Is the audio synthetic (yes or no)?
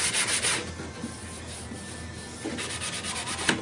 no